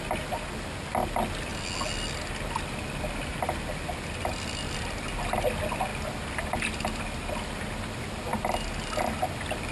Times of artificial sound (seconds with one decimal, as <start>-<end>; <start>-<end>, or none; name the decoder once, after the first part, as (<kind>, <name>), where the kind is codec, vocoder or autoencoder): none